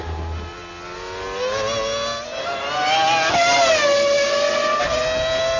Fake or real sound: real